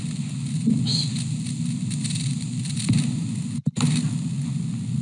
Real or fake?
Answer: real